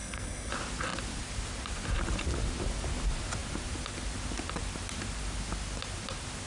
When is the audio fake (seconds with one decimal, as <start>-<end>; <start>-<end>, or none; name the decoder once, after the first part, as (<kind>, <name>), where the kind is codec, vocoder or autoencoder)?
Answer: 0.0-0.5 (codec, SNAC)